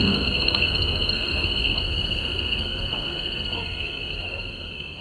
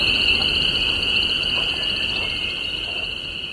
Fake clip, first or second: first